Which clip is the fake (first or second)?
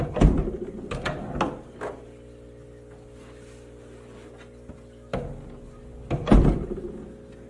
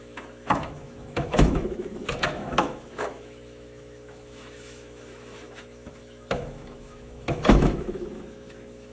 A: second